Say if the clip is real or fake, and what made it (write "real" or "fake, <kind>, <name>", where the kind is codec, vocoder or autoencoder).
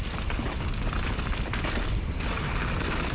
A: real